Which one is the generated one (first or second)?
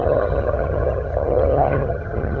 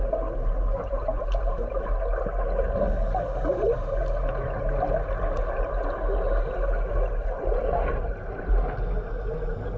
first